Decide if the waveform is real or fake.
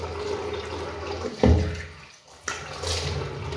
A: real